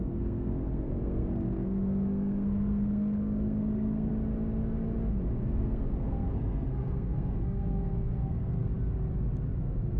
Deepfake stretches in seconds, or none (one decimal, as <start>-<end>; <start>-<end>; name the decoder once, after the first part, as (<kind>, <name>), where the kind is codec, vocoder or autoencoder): 0.0-4.1 (codec, SNAC); 5.4-8.7; 9.6-10.0